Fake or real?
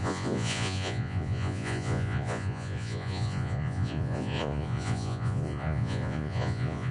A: fake